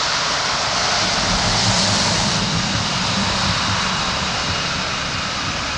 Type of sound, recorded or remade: recorded